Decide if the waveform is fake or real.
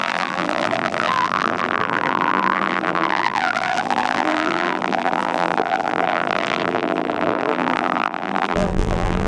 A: fake